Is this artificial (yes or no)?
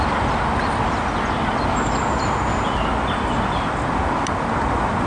no